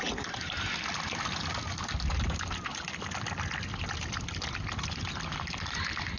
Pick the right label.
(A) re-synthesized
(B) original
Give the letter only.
B